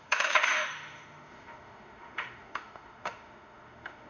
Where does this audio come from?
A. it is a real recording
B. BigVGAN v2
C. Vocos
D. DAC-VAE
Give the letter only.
D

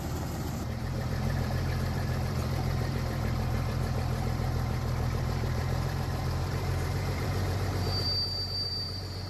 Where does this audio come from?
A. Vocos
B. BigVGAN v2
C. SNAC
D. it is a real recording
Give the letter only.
B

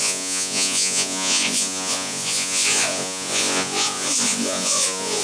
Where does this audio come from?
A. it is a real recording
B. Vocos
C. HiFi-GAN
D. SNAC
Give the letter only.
B